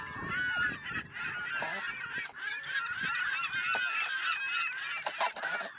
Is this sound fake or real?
real